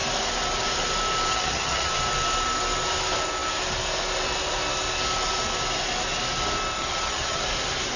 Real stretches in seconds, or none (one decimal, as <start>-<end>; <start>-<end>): 0.0-1.3; 1.9-6.8; 7.4-8.0